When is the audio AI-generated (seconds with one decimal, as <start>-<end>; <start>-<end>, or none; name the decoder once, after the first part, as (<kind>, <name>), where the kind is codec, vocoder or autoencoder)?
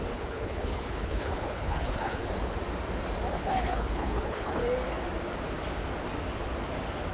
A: 0.0-2.2 (codec, HILCodec); 3.3-4.6